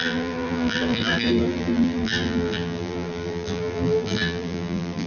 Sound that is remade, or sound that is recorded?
remade